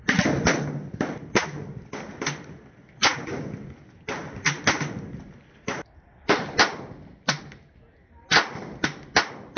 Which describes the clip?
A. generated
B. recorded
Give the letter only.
B